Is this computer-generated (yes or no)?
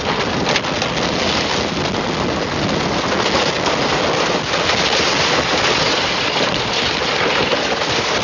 no